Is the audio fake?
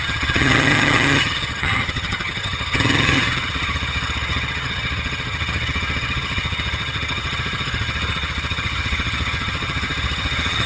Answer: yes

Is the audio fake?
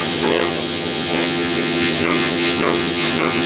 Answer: yes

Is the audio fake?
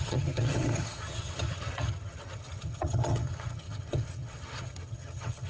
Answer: yes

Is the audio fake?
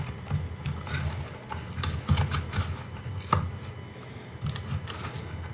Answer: no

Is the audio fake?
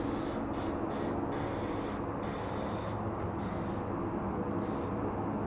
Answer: no